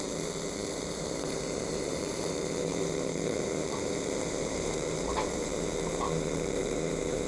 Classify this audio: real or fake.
fake